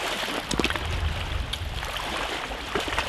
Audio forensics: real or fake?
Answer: real